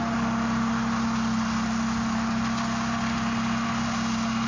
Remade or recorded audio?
recorded